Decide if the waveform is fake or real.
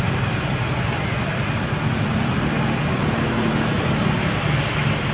real